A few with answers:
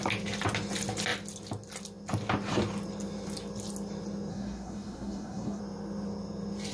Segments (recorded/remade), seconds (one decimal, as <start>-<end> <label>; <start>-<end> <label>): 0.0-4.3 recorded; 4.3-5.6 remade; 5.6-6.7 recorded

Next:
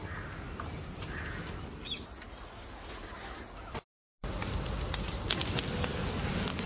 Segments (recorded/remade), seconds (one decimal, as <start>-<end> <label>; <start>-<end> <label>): 0.0-6.7 recorded

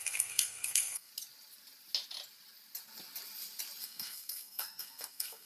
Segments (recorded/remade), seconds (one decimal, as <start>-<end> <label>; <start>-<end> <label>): 0.0-1.1 remade; 1.1-3.8 recorded; 3.8-5.5 remade

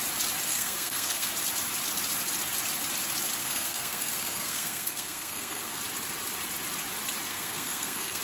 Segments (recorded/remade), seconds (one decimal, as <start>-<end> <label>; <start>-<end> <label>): 0.0-0.5 recorded; 0.5-1.3 remade; 1.3-3.4 recorded; 3.4-5.8 remade; 5.8-7.3 recorded; 7.3-8.2 remade

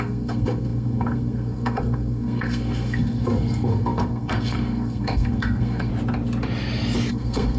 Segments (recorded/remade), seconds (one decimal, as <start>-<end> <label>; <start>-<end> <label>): 0.0-5.9 remade; 5.9-7.1 recorded; 7.1-7.6 remade

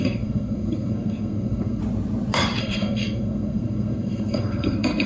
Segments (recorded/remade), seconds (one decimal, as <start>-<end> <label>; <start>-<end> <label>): 0.0-1.8 remade; 1.8-2.6 recorded; 2.6-5.1 remade